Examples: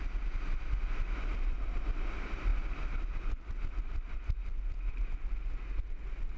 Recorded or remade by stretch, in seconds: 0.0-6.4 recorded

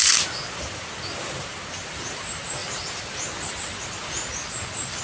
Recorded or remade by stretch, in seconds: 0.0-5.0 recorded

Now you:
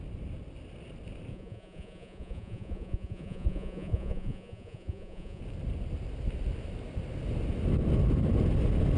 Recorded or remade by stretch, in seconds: 0.0-1.3 recorded; 1.3-5.4 remade; 5.4-9.0 recorded

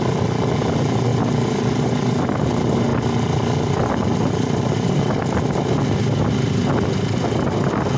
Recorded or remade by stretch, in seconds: 0.0-8.0 recorded

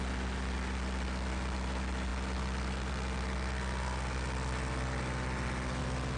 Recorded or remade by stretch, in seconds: 0.0-6.2 recorded

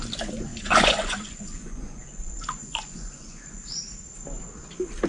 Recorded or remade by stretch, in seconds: 0.0-0.5 recorded; 0.5-3.6 remade; 3.6-5.1 recorded

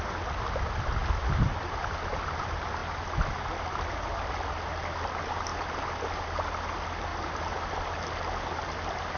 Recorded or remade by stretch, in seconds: 0.0-9.2 recorded